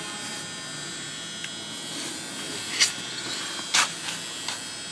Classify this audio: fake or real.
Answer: real